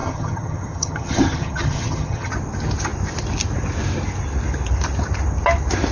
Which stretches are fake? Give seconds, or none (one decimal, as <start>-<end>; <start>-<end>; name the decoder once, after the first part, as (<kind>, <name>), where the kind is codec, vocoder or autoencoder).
0.0-2.3 (vocoder, HiFi-GAN)